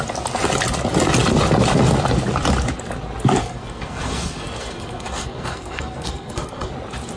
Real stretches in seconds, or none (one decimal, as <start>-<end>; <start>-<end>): 0.0-3.4; 6.7-7.2

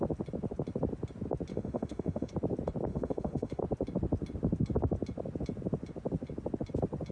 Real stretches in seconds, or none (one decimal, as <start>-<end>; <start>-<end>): 0.0-1.5; 2.3-2.9; 3.6-7.1

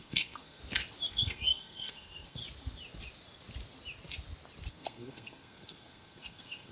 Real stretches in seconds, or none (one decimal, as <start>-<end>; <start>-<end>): 0.6-1.1; 2.4-4.7